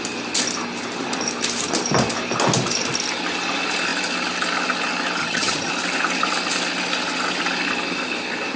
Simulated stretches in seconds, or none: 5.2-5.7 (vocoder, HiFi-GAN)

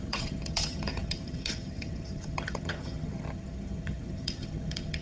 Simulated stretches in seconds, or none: 0.0-5.0 (vocoder, HiFi-GAN)

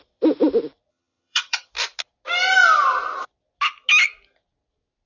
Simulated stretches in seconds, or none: 0.9-1.7 (vocoder, HiFi-GAN)

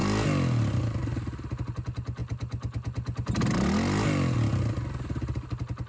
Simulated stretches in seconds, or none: none

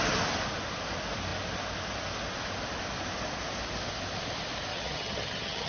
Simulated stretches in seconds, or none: 4.7-5.7 (vocoder, HiFi-GAN)

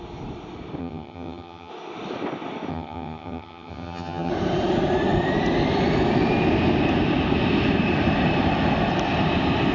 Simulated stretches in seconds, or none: 0.8-1.7 (vocoder, HiFi-GAN); 2.7-4.3